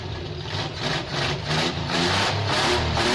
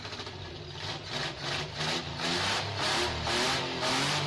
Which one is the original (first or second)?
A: second